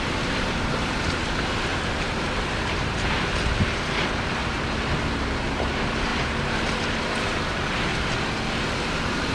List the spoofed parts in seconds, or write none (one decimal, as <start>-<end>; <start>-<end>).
0.0-7.9; 8.6-9.3